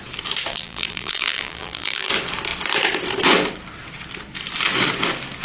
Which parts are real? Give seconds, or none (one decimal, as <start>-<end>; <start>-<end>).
0.0-0.5; 2.1-5.4